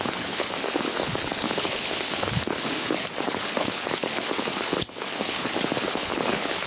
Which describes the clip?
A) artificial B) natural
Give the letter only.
A